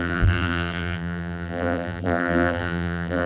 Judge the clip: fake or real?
fake